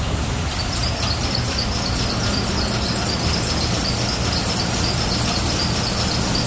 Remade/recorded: recorded